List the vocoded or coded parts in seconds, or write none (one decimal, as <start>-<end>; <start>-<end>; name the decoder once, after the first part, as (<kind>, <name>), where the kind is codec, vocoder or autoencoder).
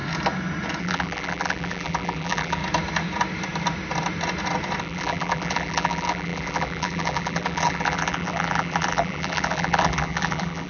0.8-2.6 (vocoder, BigVGAN v2); 4.8-10.7